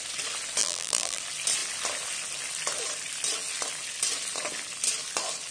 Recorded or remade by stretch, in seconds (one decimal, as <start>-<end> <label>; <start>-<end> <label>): 0.0-0.6 recorded; 0.6-1.2 remade; 1.2-5.5 recorded